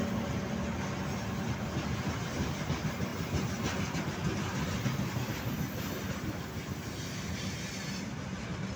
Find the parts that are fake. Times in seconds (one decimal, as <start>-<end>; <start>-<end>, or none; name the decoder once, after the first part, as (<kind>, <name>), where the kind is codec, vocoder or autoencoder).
none